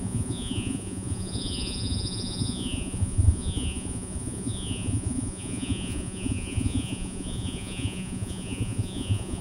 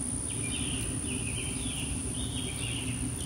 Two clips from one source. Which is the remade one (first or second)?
first